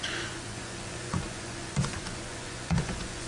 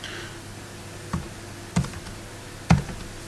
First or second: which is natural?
second